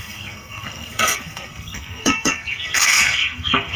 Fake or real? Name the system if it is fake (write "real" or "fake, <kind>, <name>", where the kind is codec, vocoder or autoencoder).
fake, codec, SNAC